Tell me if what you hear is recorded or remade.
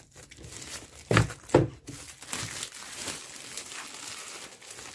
recorded